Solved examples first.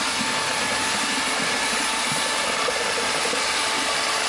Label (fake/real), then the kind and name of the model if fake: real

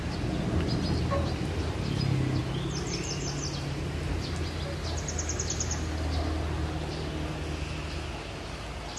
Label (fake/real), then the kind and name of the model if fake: real